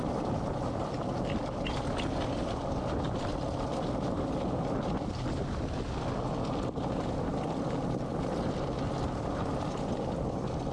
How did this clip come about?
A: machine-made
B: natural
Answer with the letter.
B